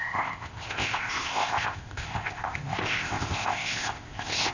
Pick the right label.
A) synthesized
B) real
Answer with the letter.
A